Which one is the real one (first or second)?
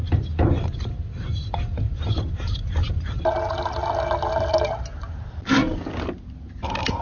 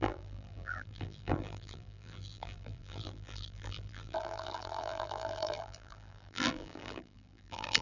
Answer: first